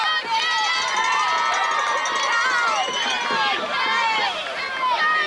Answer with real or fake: real